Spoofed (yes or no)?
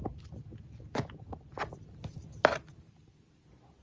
no